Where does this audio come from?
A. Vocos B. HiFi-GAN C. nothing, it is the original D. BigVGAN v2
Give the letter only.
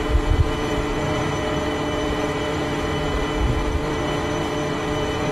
D